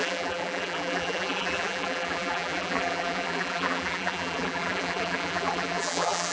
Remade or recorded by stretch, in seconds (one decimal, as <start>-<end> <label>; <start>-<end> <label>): 0.0-6.3 remade